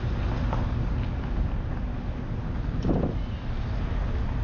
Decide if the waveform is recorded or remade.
recorded